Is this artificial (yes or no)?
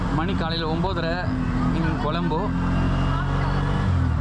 no